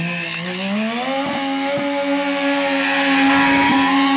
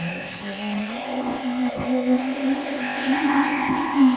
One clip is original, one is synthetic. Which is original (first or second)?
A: first